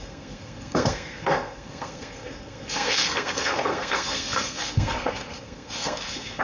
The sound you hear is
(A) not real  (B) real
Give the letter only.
A